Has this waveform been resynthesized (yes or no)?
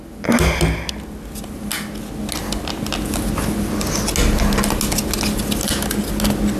no